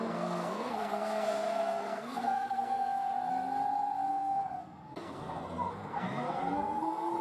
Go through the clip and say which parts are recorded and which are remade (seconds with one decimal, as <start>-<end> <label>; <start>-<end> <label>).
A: 0.0-3.1 remade; 3.1-4.1 recorded; 4.1-7.2 remade